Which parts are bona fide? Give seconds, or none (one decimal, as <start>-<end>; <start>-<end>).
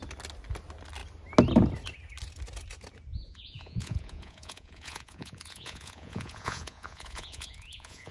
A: 0.0-3.1